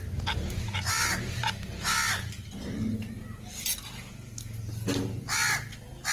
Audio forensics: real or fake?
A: real